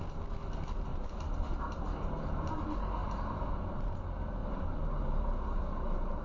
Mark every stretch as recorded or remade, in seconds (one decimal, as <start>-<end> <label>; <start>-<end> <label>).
0.0-0.9 recorded; 0.9-2.6 remade; 2.6-3.0 recorded; 3.0-3.9 remade; 3.9-4.4 recorded; 4.4-5.6 remade; 5.6-6.2 recorded